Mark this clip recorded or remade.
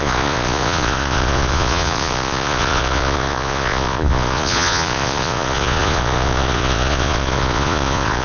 remade